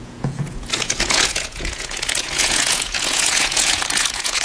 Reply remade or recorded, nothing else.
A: remade